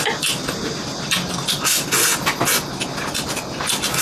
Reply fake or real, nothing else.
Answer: real